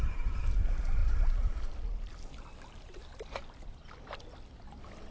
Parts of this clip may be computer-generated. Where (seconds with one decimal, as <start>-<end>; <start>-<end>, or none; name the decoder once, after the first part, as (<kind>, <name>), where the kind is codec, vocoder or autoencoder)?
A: 1.0-3.4 (vocoder, BigVGAN v2)